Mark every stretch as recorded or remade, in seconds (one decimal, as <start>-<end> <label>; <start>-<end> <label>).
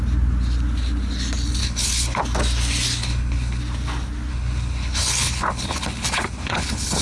0.0-1.6 recorded; 1.6-2.2 remade; 2.2-3.0 recorded; 3.0-3.6 remade; 3.6-4.3 recorded; 4.3-7.0 remade